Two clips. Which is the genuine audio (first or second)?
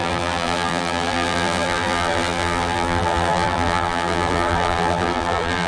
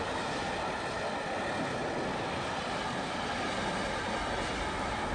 second